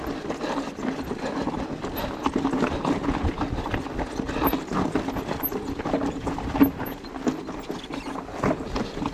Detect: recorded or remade recorded